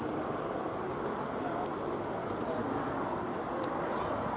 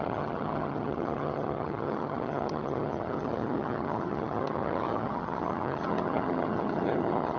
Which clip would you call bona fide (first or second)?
first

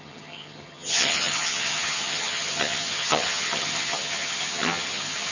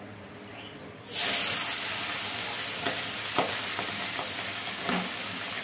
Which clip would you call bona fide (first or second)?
second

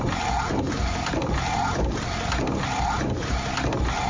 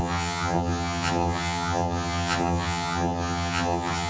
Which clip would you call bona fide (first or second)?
first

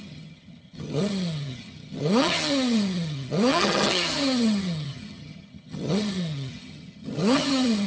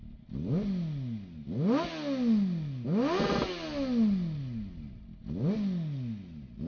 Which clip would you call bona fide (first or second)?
second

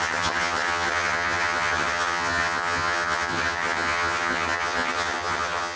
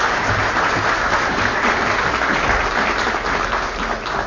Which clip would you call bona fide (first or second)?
second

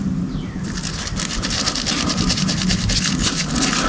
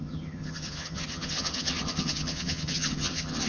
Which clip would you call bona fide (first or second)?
first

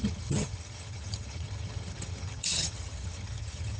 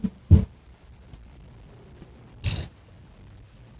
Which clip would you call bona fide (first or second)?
second